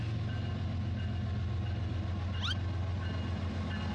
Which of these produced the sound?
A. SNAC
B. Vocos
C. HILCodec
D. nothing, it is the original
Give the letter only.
D